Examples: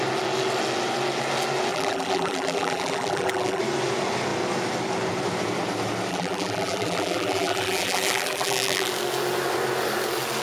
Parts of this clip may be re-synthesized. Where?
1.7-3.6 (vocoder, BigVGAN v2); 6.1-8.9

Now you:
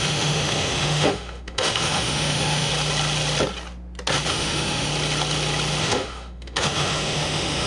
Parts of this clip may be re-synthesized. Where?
0.0-2.7 (autoencoder, DAC-VAE); 4.3-4.9; 5.8-7.7